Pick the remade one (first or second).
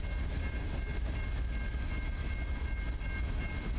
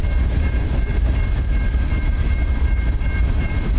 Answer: second